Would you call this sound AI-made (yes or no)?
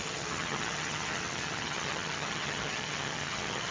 yes